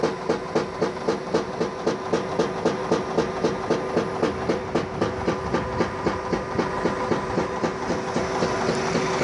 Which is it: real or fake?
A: real